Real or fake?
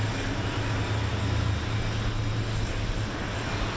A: real